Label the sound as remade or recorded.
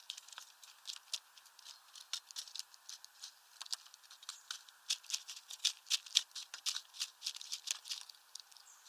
recorded